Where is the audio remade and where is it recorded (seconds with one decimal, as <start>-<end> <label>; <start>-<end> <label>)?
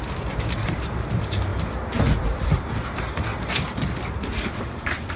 0.0-1.5 remade; 1.5-4.6 recorded; 4.6-5.2 remade